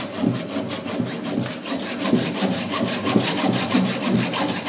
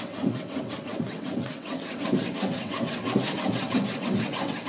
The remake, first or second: second